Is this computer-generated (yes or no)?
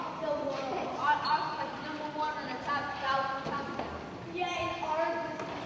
no